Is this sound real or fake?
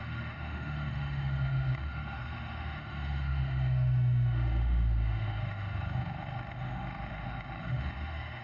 fake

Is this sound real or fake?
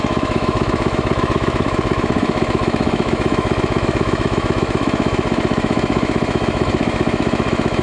fake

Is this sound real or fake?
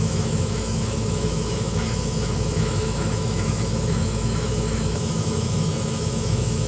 fake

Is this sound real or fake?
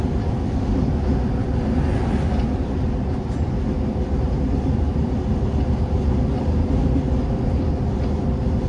real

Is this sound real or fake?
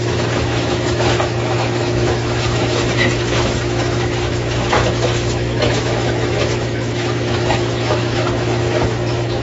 fake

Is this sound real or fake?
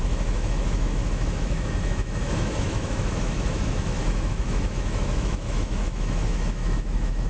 fake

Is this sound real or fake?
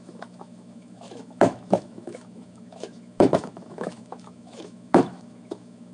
fake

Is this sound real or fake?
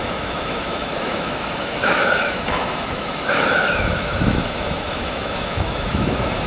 fake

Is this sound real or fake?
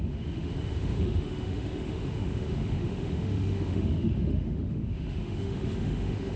fake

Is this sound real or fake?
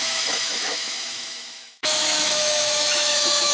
fake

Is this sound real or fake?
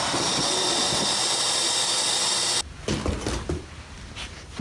real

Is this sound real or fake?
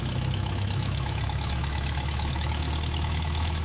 fake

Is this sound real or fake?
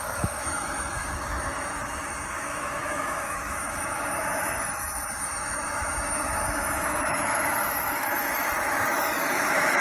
fake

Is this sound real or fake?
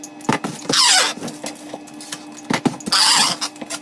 real